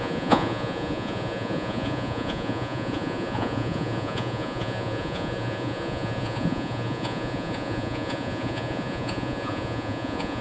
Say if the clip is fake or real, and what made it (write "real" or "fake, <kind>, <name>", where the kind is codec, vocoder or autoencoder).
fake, vocoder, Vocos